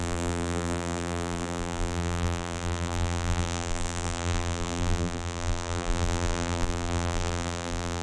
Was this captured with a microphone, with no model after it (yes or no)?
no